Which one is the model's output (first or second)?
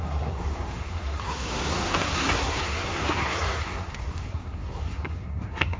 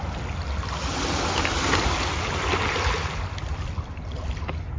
first